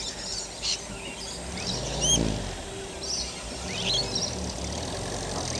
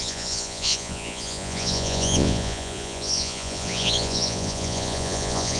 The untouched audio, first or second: first